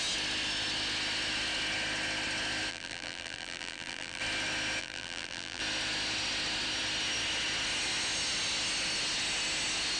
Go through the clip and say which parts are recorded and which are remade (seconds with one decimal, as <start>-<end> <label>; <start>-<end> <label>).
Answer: 0.0-2.7 recorded; 2.7-4.2 remade; 4.2-4.8 recorded; 4.8-5.6 remade; 5.6-10.0 recorded